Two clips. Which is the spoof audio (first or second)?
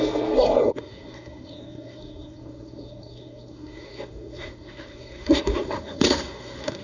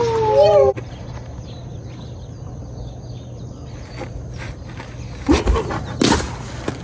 first